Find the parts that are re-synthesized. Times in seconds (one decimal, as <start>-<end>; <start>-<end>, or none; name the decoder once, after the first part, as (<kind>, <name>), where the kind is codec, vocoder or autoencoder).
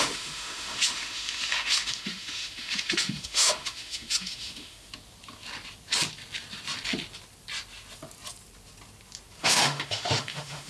0.0-4.9 (autoencoder, DAC-VAE); 9.4-10.7